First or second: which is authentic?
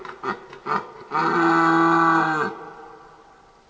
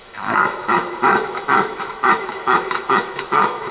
first